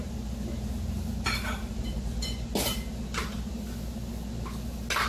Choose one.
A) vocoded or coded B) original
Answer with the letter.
B